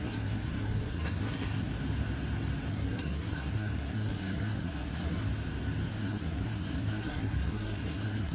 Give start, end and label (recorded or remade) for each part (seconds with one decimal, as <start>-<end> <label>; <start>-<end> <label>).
0.0-1.7 remade; 1.7-2.7 recorded; 2.7-5.3 remade; 5.3-5.9 recorded; 5.9-8.3 remade